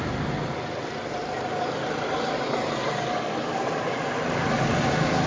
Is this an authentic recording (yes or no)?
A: yes